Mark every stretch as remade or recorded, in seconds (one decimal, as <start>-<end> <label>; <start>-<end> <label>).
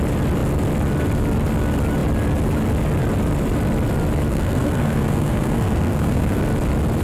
0.0-4.3 recorded; 4.3-6.4 remade; 6.4-7.0 recorded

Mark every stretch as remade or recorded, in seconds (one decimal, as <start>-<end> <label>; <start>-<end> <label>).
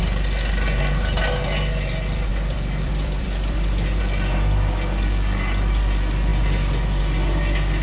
0.0-2.3 recorded; 2.3-4.0 remade; 4.0-7.8 recorded